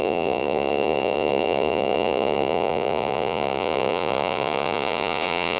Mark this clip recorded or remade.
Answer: remade